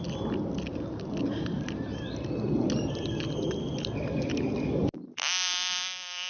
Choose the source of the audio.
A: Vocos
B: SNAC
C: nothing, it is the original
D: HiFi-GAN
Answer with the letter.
C